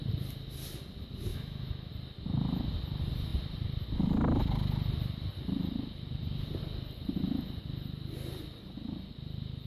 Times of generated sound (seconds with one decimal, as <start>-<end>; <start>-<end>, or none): 1.3-1.9